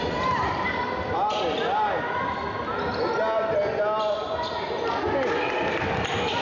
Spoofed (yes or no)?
no